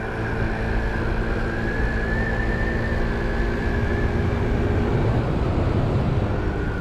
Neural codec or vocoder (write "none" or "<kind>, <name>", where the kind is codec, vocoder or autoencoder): none